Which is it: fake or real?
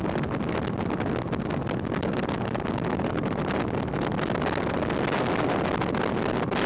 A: real